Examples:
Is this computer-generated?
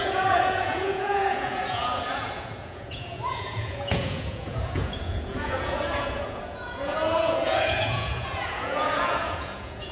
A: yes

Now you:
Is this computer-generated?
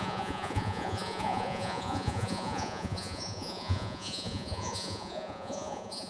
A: yes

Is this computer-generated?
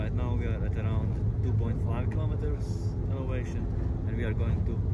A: no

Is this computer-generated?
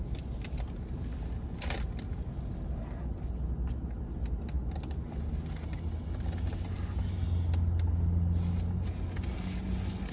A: no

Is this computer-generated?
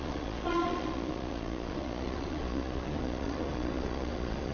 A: yes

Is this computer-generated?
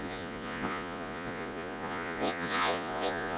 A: yes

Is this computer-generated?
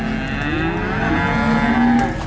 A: no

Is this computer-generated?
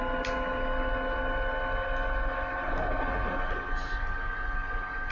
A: no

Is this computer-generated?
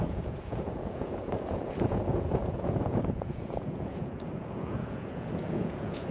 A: yes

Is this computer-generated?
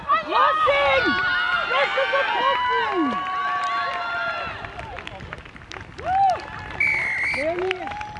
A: no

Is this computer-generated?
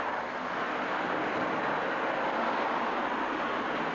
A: no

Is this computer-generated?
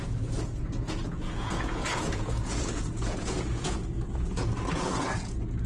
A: yes